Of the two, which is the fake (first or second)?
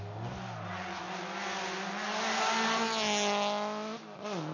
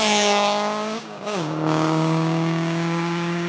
second